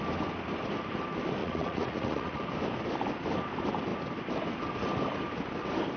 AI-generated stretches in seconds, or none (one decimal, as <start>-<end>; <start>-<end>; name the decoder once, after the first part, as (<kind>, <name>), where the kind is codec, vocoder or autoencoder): 1.4-2.4 (vocoder, Vocos)